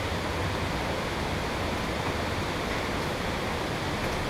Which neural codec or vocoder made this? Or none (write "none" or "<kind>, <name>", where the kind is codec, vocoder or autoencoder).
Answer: none